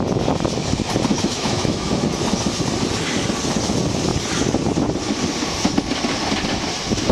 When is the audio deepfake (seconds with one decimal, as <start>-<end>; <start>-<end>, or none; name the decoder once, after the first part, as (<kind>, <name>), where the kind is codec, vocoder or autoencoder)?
1.1-1.9 (autoencoder, DAC-VAE)